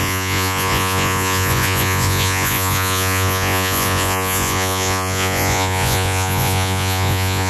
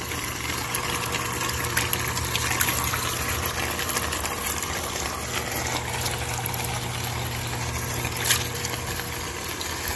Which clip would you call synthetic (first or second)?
first